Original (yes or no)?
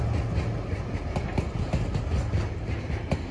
yes